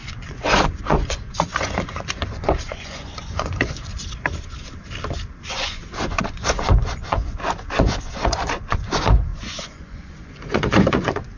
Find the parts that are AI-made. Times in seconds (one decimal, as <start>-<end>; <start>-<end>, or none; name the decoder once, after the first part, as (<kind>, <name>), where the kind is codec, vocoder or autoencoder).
0.0-3.9 (vocoder, Vocos); 5.5-11.4